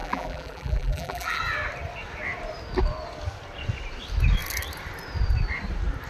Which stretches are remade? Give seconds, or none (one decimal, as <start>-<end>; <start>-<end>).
0.0-1.4